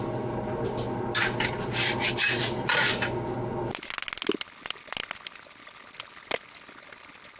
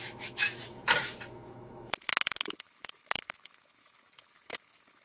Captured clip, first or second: first